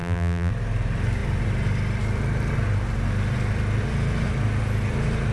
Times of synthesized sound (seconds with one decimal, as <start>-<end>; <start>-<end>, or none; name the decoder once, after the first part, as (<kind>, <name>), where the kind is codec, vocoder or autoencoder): 0.0-0.5 (vocoder, BigVGAN v2)

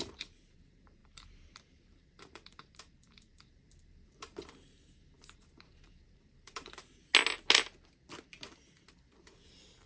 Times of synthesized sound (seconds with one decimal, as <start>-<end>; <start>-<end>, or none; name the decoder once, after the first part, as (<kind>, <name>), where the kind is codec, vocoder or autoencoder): 0.0-7.1 (vocoder, BigVGAN v2); 9.3-9.9

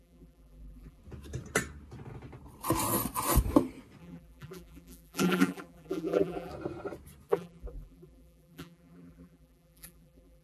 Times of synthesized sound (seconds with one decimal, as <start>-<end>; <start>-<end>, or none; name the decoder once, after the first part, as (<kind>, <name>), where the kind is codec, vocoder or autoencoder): 0.0-1.0 (vocoder, BigVGAN v2); 4.0-6.5; 7.3-10.4

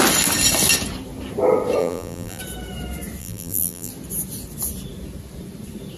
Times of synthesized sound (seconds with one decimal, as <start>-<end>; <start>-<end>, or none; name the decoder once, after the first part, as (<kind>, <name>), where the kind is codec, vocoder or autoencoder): 1.8-2.4 (vocoder, BigVGAN v2); 3.2-3.9

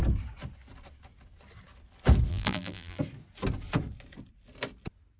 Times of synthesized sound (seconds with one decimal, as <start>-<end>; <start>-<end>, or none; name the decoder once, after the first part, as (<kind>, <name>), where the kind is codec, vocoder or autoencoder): 2.3-3.0 (vocoder, BigVGAN v2)

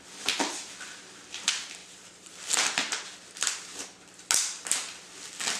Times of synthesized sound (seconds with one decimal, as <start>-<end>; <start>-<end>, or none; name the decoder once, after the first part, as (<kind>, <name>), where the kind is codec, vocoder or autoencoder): 1.8-2.3 (vocoder, BigVGAN v2)